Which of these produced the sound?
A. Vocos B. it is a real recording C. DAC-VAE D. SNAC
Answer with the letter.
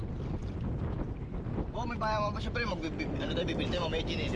B